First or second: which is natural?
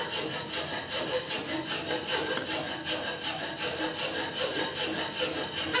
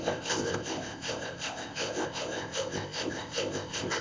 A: first